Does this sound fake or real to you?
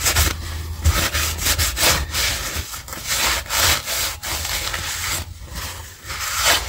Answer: real